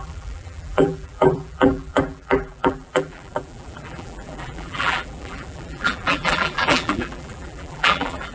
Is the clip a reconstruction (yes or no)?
yes